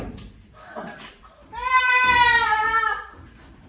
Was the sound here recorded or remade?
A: recorded